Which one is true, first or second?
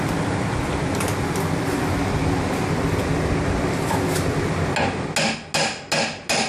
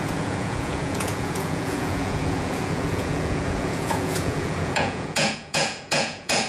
first